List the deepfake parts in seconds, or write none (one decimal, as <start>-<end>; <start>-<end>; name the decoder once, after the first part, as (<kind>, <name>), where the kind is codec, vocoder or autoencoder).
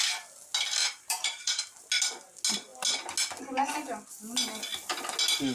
0.8-1.8 (vocoder, BigVGAN v2)